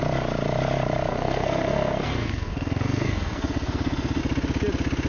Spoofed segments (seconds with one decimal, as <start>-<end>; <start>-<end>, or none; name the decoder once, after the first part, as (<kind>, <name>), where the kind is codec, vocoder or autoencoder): 1.1-4.2 (codec, SNAC)